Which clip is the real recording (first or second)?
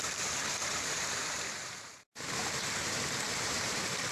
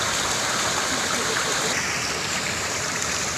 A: second